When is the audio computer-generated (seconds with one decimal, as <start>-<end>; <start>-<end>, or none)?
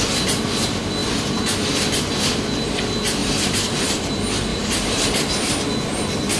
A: 3.2-4.0; 4.5-5.0